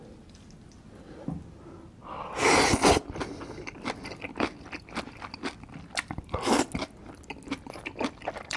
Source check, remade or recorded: recorded